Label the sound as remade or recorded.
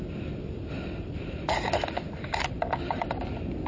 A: recorded